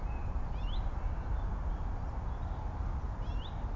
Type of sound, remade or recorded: recorded